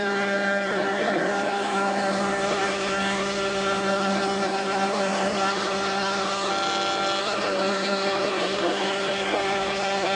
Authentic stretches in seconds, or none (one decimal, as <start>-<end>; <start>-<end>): 6.5-7.2

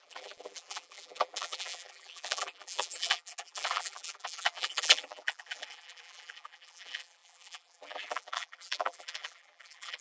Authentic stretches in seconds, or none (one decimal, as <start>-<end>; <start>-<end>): none

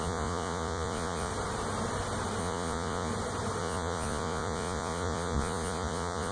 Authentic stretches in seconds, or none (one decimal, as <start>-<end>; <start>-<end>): 1.3-2.4; 3.1-3.6

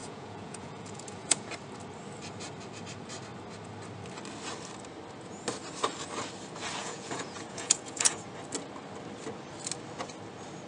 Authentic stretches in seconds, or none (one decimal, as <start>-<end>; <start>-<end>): 1.5-6.8; 8.2-10.7

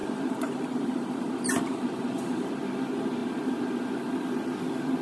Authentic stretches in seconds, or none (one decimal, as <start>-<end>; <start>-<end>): 2.5-5.0